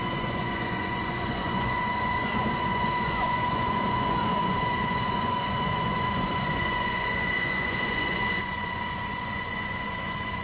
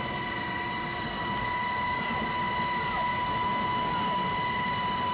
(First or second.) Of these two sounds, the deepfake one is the first